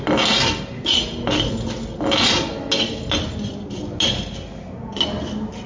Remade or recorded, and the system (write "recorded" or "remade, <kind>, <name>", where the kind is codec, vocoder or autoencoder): recorded